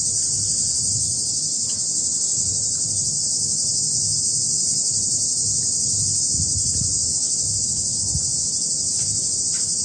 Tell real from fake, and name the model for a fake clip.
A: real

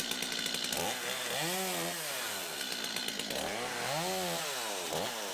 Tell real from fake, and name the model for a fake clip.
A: real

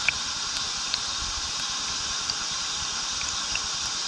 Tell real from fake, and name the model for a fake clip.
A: real